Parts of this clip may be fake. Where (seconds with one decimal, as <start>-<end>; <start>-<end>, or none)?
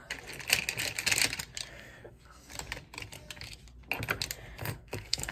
1.7-2.5; 4.6-5.3